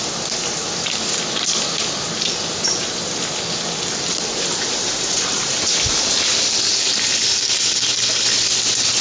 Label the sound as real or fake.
real